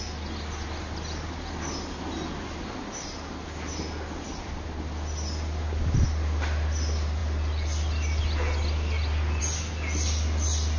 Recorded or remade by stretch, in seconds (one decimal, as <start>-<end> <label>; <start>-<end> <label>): 0.0-10.8 recorded